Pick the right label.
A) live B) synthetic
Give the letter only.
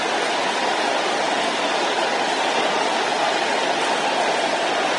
A